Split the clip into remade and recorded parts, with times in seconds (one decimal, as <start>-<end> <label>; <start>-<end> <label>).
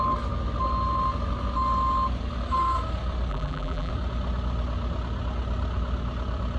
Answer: 0.0-3.3 recorded; 3.3-3.9 remade; 3.9-6.6 recorded